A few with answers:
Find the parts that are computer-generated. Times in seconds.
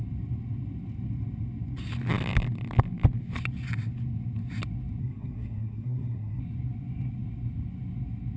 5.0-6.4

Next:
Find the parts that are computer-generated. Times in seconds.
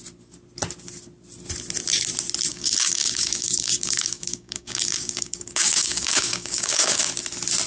2.5-7.1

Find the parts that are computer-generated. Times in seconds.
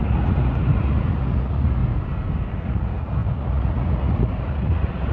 0.0-1.8; 2.5-5.1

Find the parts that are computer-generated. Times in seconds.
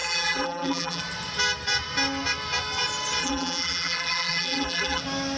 0.0-1.0; 3.2-5.0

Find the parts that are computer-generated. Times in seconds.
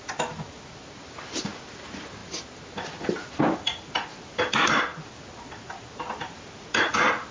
none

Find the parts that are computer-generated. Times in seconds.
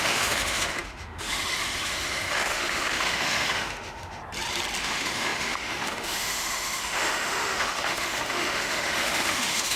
0.0-4.2; 4.8-9.8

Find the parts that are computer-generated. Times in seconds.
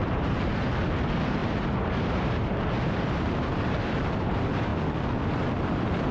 0.0-4.7; 5.3-6.1